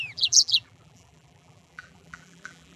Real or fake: fake